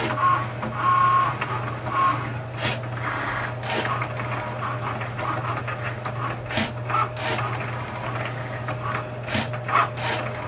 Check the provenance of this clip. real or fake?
real